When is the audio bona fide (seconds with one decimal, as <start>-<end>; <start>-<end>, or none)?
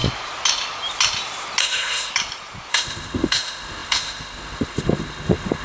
0.0-1.6; 2.1-2.7